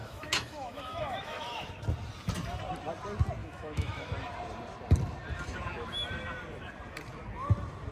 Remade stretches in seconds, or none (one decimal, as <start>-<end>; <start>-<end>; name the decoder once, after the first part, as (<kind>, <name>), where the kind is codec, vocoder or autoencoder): 0.0-1.7 (autoencoder, DAC-VAE); 3.4-4.1